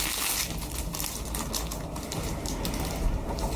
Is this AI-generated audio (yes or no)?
no